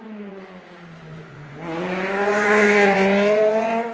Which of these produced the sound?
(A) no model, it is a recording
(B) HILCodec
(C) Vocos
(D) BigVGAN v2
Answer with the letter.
C